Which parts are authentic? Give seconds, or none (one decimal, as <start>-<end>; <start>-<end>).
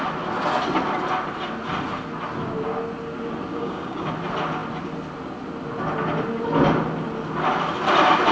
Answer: 0.0-3.5; 4.1-8.3